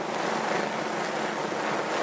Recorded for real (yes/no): yes